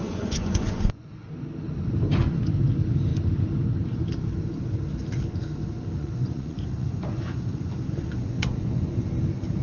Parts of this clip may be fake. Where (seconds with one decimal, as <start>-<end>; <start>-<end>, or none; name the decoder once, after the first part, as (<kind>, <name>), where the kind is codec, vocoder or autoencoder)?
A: 0.0-1.1 (vocoder, Vocos); 6.0-9.1